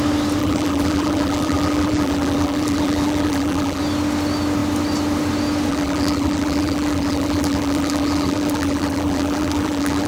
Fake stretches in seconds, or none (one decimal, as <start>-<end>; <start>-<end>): 0.4-3.8; 5.7-10.1